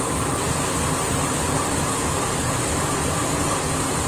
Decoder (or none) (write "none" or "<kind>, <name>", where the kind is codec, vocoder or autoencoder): vocoder, BigVGAN v2